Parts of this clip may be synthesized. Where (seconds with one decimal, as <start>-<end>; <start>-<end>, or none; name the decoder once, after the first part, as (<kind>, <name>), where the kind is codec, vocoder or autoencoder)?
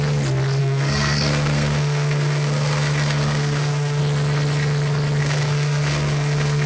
0.6-4.0 (codec, SNAC); 5.2-6.7